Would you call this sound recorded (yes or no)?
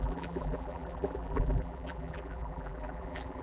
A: no